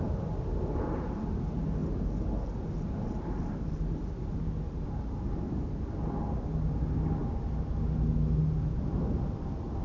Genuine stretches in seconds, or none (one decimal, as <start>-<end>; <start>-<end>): 0.0-9.8